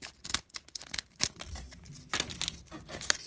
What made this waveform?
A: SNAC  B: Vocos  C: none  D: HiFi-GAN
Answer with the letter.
C